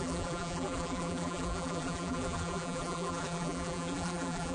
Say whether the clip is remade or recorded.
remade